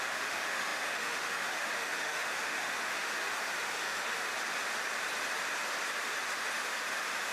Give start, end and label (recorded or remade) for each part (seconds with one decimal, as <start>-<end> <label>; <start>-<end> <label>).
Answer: 0.0-4.3 remade; 4.3-6.5 recorded; 6.5-7.3 remade